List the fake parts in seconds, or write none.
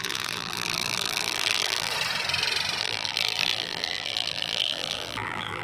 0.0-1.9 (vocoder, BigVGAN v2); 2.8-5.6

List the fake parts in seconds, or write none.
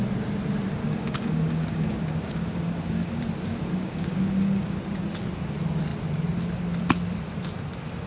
0.8-3.2 (codec, DAC); 3.7-4.8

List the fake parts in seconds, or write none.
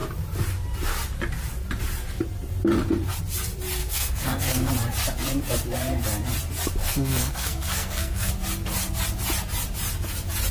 3.8-4.7 (codec, SNAC); 6.8-8.3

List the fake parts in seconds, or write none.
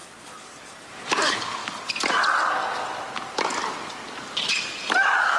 none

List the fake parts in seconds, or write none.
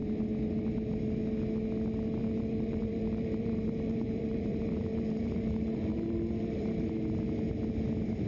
2.2-6.9 (vocoder, BigVGAN v2)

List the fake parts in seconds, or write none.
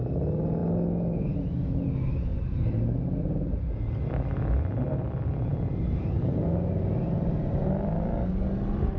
none